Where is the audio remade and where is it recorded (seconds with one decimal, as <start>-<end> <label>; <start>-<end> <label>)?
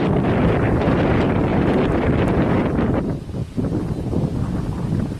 0.0-5.2 remade